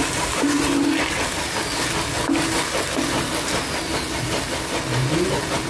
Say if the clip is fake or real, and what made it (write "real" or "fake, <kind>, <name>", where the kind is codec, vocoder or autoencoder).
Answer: real